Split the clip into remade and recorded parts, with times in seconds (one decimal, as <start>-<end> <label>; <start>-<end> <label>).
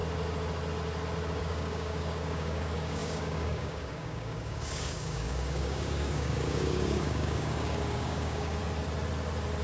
0.0-1.4 recorded; 1.4-8.6 remade; 8.6-9.6 recorded